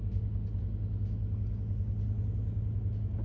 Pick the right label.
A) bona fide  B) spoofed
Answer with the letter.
A